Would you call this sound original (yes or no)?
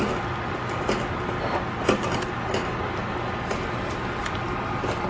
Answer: yes